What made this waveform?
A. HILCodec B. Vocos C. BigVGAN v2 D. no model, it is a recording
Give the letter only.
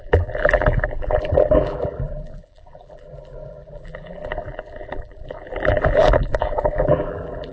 C